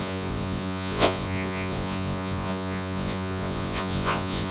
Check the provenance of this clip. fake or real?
fake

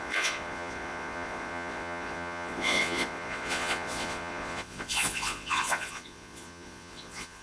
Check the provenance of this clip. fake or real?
fake